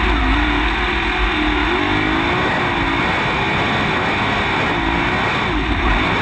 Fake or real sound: real